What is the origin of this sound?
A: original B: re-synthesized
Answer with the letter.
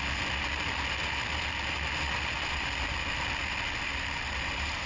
A